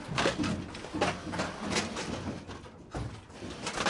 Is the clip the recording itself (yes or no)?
yes